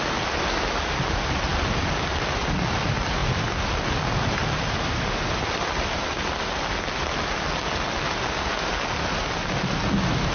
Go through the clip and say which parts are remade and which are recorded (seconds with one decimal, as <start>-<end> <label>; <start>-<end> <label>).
0.0-10.3 recorded